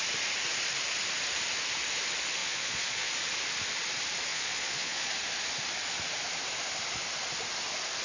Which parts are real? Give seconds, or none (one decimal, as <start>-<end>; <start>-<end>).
0.0-2.4; 3.1-4.3; 5.1-8.0